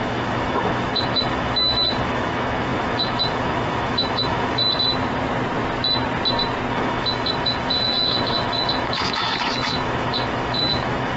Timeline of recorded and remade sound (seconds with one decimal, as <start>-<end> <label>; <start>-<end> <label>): 0.0-4.6 remade; 4.6-6.7 recorded; 6.7-11.2 remade